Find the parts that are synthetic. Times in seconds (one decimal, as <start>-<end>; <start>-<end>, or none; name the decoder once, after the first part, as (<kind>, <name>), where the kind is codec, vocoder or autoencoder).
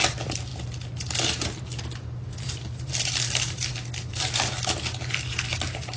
none